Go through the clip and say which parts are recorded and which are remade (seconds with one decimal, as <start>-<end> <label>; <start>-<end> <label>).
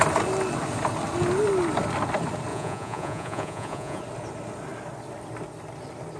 0.0-2.5 recorded; 2.5-4.0 remade; 4.0-6.2 recorded